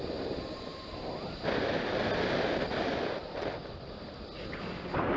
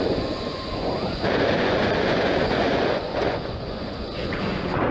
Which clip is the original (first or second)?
first